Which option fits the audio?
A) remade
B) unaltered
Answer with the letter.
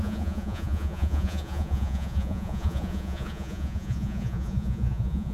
A